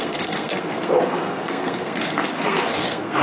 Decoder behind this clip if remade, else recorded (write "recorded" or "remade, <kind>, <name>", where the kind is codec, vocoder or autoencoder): remade, codec, SNAC